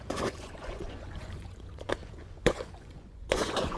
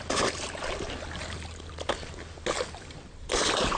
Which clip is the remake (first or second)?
first